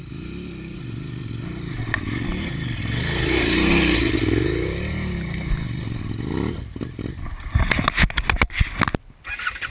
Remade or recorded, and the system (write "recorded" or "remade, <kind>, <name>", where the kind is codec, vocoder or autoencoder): recorded